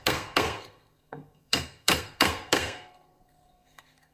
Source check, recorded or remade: remade